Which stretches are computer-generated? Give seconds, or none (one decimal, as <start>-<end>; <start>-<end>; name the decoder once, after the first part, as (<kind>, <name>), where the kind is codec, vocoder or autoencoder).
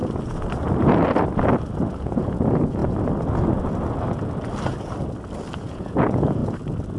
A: 1.9-2.8 (vocoder, Vocos); 5.6-6.4